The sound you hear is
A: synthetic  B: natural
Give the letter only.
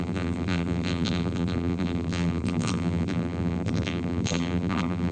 A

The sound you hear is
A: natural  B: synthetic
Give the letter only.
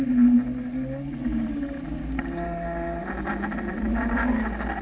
A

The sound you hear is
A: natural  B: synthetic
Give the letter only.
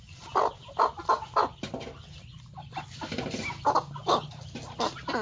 A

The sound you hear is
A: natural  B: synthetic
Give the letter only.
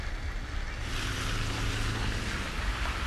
A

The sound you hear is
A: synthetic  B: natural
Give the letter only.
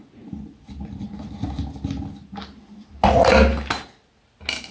B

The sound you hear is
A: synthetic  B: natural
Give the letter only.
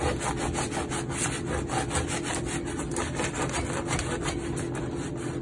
B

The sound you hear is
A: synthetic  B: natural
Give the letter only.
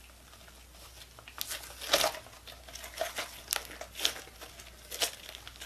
B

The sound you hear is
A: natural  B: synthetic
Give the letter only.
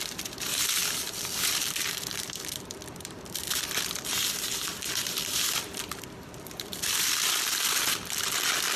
B